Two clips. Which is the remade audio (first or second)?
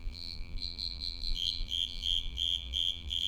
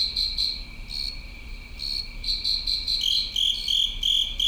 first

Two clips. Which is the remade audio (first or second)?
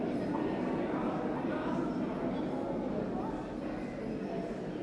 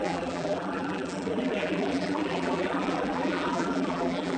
second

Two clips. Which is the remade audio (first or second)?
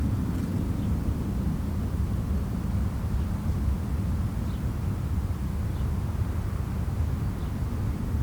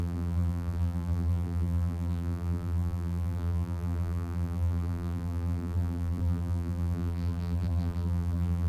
second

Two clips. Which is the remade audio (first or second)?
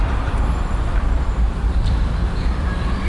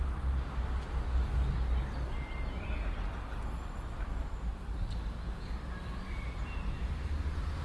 first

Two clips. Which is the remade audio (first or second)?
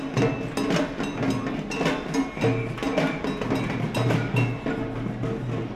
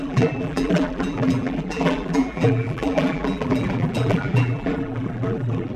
second